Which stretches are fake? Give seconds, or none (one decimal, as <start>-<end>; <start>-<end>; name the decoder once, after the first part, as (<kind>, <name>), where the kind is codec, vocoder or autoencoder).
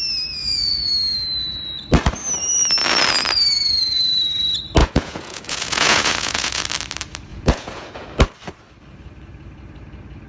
0.4-0.9 (vocoder, Vocos); 4.8-6.6; 7.3-8.1